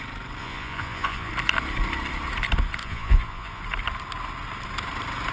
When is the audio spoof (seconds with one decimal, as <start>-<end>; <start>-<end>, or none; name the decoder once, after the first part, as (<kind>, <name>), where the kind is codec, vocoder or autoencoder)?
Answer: 0.4-1.3 (vocoder, Vocos); 2.8-3.6